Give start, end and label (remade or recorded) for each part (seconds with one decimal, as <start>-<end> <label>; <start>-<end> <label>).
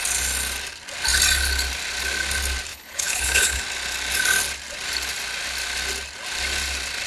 0.0-2.7 recorded; 2.7-3.6 remade; 3.6-7.1 recorded